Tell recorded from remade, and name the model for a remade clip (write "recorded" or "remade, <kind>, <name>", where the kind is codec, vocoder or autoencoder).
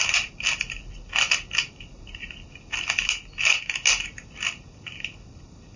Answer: recorded